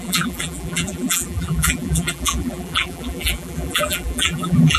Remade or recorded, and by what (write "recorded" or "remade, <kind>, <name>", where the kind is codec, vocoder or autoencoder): remade, vocoder, BigVGAN v2